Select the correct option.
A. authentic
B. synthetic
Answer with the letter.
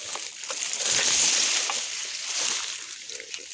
A